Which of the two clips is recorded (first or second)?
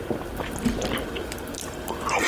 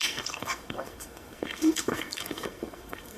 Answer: first